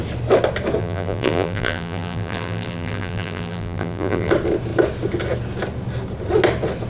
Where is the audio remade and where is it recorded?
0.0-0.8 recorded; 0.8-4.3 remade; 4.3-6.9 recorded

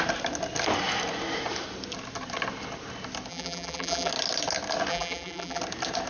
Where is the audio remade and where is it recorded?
0.0-3.3 recorded; 3.3-4.1 remade; 4.1-4.9 recorded; 4.9-5.6 remade; 5.6-6.1 recorded

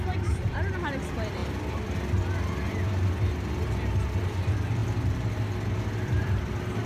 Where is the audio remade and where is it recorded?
0.0-1.4 remade; 1.4-4.2 recorded; 4.2-4.8 remade; 4.8-5.3 recorded; 5.3-6.9 remade

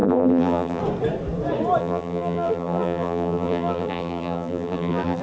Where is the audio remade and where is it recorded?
0.0-0.8 remade; 0.8-1.8 recorded; 1.8-5.2 remade

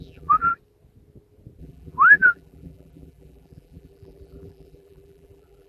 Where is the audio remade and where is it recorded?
0.0-0.5 remade; 0.5-1.6 recorded; 1.6-5.7 remade